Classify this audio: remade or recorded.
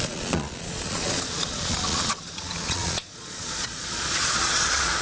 remade